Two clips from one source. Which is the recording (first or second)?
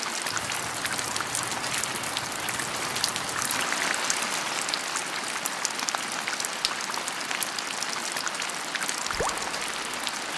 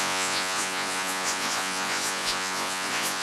first